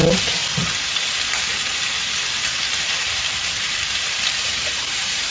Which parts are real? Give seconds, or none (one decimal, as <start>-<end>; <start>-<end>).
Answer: 0.4-3.0